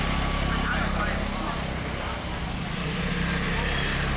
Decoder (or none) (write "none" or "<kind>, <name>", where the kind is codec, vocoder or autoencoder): none